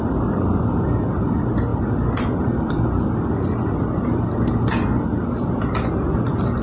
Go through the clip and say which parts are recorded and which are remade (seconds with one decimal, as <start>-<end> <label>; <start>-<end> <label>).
0.0-6.6 recorded